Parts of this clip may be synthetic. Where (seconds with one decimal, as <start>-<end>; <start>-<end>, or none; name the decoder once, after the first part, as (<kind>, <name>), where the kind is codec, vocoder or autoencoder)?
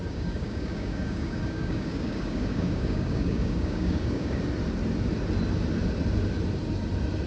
0.0-4.4 (codec, DAC)